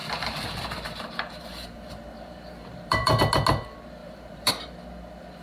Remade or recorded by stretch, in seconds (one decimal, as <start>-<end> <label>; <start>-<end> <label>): 0.0-3.2 remade; 3.2-4.0 recorded; 4.0-4.5 remade; 4.5-5.4 recorded